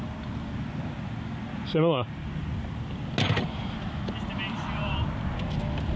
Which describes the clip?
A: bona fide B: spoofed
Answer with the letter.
A